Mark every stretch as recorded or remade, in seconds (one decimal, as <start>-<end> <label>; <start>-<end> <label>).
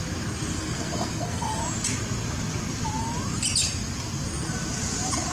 0.0-0.5 recorded; 0.5-1.6 remade; 1.6-5.3 recorded